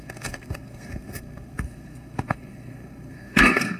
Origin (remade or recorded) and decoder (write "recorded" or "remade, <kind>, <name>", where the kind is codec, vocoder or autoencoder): remade, codec, SNAC